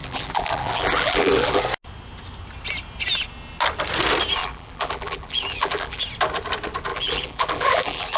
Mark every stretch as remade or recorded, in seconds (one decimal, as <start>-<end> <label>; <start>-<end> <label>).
0.0-1.6 remade; 1.6-4.4 recorded; 4.4-6.0 remade; 6.0-6.9 recorded; 6.9-8.2 remade